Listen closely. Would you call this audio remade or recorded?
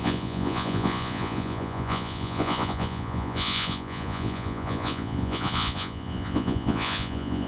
remade